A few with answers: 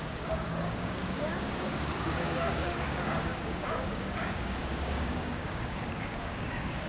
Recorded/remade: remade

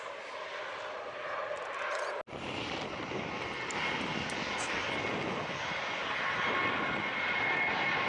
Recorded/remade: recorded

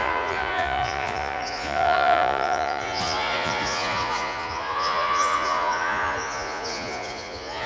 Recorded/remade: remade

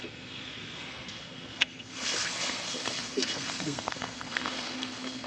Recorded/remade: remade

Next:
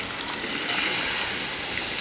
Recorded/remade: recorded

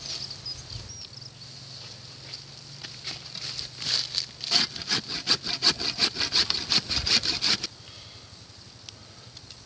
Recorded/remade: recorded